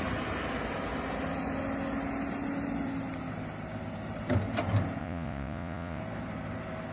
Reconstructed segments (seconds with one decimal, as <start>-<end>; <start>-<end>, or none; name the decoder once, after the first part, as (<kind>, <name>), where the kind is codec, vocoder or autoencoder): 5.0-6.0 (vocoder, Vocos)